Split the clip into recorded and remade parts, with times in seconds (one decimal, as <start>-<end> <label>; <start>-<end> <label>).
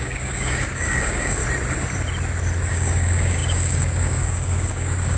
0.0-1.4 remade; 1.4-2.7 recorded; 2.7-5.2 remade